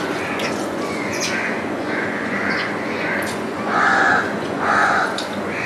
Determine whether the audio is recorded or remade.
remade